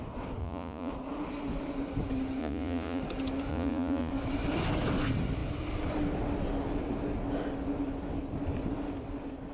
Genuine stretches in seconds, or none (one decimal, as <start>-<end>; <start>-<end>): 0.0-0.4; 0.9-2.4; 3.0-3.5; 4.1-9.5

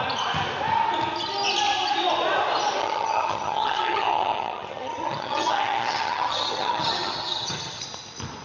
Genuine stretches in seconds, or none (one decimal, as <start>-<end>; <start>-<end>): 0.0-2.8; 7.8-8.4

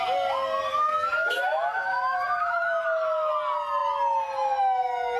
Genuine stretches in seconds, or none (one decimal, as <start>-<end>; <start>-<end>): 0.0-0.7; 3.3-5.2

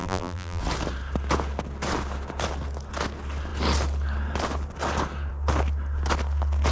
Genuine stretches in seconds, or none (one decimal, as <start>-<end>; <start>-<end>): 0.6-6.7

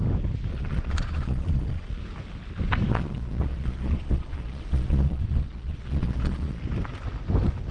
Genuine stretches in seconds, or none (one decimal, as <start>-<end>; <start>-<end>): 0.0-0.5; 2.0-2.9; 6.6-7.7

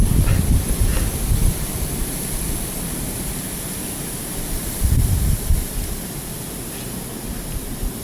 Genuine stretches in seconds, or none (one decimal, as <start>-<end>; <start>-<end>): 0.0-0.9; 5.7-8.0

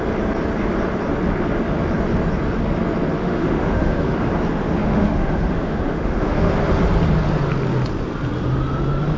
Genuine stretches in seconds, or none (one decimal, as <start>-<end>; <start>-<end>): 0.0-3.2; 4.2-4.8; 6.5-9.2

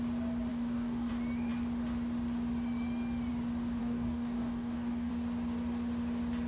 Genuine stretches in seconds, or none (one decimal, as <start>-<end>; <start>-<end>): 0.0-0.5; 1.1-3.8; 5.1-6.5